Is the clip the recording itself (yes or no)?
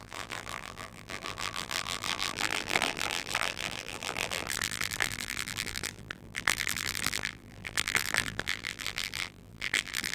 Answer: no